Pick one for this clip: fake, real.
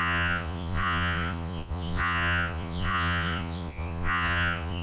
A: fake